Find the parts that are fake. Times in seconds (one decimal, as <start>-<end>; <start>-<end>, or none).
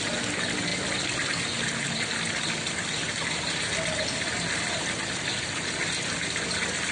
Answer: none